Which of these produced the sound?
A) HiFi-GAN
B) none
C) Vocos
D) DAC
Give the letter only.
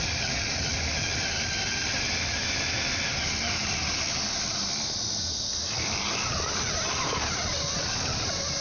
B